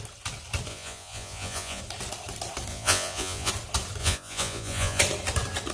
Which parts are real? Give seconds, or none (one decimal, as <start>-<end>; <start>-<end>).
0.0-0.7; 1.8-2.7; 3.5-4.0; 5.0-5.7